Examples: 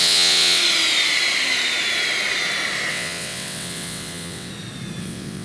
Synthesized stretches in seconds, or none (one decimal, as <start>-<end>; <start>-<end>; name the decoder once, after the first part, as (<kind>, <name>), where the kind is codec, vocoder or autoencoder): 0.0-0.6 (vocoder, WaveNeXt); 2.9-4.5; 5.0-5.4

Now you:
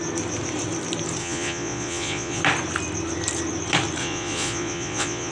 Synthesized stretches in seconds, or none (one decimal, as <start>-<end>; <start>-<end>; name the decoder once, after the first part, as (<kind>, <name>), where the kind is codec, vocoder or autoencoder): 1.2-2.4 (vocoder, Vocos); 4.0-5.3

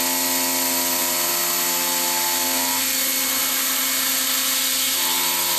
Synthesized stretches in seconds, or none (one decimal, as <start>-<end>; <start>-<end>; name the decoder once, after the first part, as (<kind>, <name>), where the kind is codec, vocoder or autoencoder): none

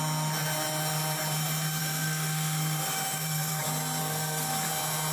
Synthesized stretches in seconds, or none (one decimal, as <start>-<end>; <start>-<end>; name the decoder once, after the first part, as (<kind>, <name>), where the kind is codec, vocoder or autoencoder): 1.8-3.6 (codec, SNAC); 4.0-4.5

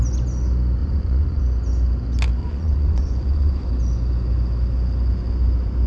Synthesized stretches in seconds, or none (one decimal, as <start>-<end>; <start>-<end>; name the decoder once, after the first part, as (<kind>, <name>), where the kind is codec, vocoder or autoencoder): 0.8-1.4 (vocoder, Vocos); 2.4-3.7

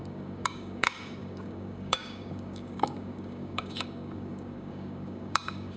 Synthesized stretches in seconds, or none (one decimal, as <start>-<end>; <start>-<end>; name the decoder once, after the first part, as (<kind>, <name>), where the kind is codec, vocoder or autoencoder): 0.0-5.8 (codec, DAC)

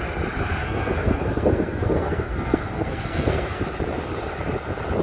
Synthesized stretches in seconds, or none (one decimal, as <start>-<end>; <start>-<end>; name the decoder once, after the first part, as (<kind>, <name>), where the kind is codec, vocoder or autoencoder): 0.6-3.6 (codec, SNAC)